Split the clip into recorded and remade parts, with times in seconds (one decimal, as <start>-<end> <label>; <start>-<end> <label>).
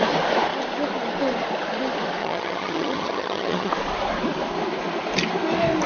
0.0-2.2 recorded; 2.2-3.7 remade; 3.7-5.9 recorded